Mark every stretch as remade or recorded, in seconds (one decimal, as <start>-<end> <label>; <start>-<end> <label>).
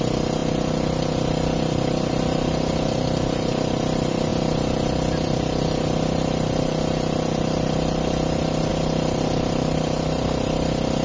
0.0-11.0 recorded